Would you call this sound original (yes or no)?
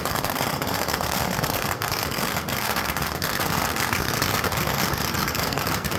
no